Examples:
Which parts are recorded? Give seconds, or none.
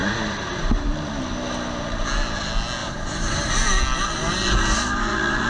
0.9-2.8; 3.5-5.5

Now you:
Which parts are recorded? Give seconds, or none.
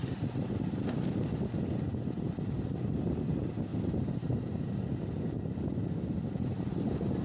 0.0-3.7; 4.6-7.2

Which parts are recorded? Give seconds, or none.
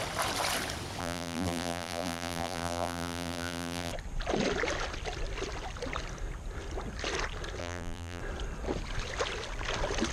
0.0-1.0; 3.9-7.6; 8.2-10.1